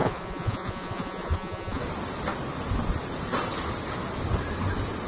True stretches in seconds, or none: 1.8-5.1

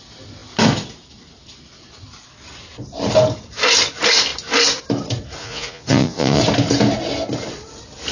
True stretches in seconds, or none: 0.0-5.4; 6.4-8.1

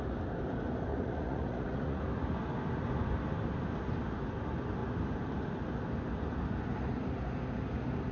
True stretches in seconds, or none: 0.0-0.9; 2.0-8.1

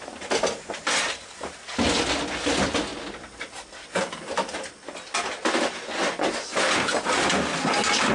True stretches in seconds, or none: 0.0-8.1

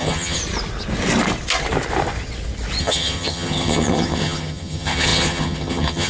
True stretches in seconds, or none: 0.4-2.8

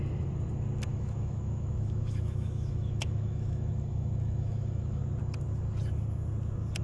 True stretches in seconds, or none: 0.0-0.9; 5.0-6.8

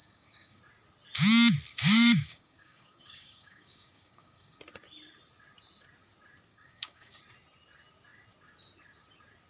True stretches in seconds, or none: 0.6-1.7; 4.6-6.5; 7.2-9.5